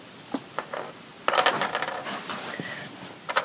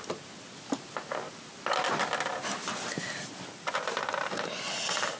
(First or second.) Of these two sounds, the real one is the second